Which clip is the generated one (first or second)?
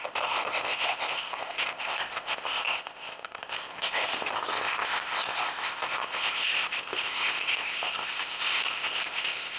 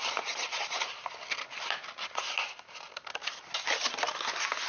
first